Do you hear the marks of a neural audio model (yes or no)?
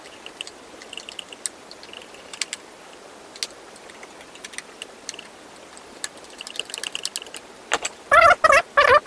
no